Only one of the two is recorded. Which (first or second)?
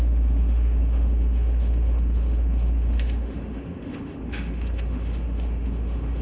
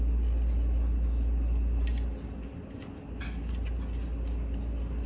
second